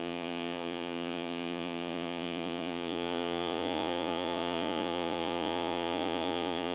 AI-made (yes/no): yes